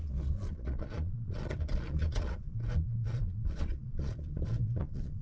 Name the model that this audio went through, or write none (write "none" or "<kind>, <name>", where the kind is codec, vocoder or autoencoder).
vocoder, Vocos